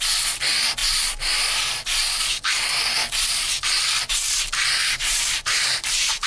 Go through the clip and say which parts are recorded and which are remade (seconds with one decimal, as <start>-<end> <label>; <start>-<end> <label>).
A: 0.0-4.8 recorded; 4.8-6.3 remade

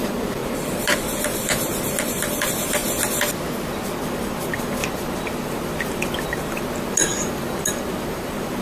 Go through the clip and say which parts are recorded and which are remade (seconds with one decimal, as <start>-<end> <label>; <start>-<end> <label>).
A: 0.0-2.8 remade; 2.8-4.0 recorded; 4.0-8.6 remade

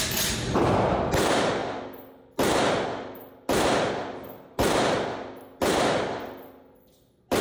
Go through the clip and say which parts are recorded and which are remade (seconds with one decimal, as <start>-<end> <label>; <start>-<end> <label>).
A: 0.0-7.4 recorded